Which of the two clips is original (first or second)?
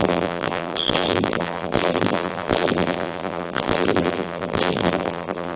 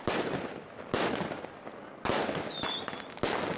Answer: second